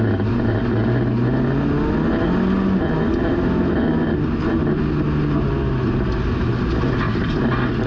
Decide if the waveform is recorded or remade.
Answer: recorded